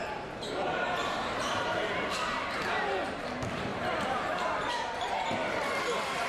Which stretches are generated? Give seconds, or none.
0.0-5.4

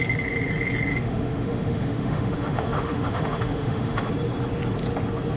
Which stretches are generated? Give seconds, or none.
0.9-4.1

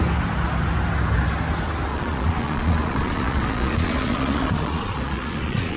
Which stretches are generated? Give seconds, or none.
1.9-5.8

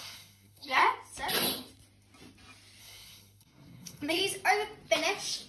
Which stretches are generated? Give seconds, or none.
0.0-0.8; 2.8-4.2

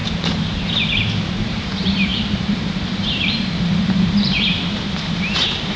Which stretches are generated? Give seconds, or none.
1.4-5.8